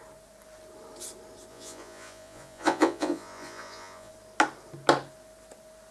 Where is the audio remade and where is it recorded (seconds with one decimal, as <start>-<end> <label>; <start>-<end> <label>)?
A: 0.0-1.5 recorded; 1.5-4.1 remade; 4.1-5.9 recorded